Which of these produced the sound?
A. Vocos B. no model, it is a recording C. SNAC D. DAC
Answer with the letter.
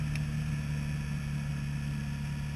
B